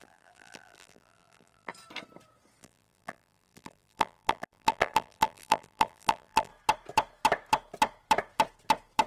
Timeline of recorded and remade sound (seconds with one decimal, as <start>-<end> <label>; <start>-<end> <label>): 0.0-1.7 remade; 1.7-2.6 recorded; 2.6-6.5 remade; 6.5-9.1 recorded